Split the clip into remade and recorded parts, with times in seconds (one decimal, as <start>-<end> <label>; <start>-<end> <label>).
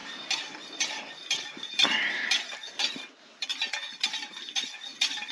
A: 0.0-5.3 recorded